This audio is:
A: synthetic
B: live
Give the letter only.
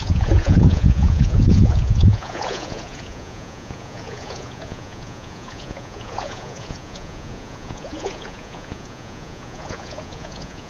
A